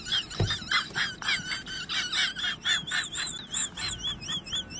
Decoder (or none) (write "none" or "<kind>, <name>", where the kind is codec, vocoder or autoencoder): none